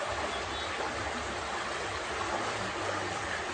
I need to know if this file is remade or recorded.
recorded